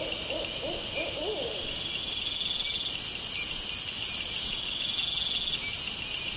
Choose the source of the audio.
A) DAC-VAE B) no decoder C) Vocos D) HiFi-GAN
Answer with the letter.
B